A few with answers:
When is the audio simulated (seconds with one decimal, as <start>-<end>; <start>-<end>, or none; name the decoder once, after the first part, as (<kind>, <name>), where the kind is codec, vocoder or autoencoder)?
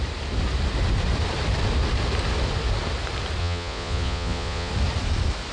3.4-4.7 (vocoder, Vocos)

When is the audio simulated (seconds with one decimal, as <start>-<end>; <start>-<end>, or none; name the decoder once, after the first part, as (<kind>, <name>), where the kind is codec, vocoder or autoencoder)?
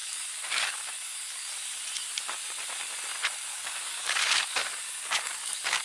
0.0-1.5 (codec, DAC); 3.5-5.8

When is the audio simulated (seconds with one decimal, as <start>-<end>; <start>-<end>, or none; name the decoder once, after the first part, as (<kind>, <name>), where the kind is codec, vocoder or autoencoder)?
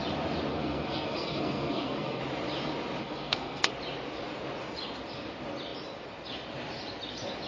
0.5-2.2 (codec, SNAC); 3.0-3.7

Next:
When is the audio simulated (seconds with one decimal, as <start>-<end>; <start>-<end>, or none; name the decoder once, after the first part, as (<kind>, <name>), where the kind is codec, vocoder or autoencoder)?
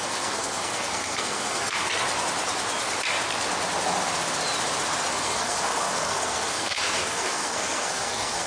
0.0-1.9 (codec, SNAC); 5.1-8.5